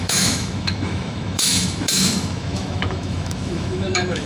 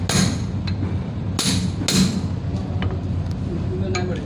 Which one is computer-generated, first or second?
first